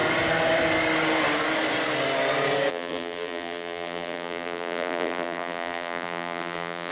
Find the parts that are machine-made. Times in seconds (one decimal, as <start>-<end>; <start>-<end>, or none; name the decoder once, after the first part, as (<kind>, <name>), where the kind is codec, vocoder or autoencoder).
2.7-6.9 (vocoder, BigVGAN v2)

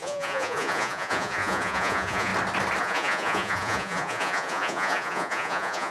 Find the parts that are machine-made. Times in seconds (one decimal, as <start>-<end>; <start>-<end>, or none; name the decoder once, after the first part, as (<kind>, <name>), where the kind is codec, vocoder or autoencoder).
0.0-2.3 (vocoder, Vocos); 2.8-5.9